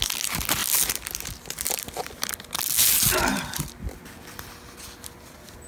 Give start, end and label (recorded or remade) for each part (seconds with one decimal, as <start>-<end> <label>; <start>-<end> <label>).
0.0-0.6 recorded; 0.6-4.0 remade; 4.0-5.7 recorded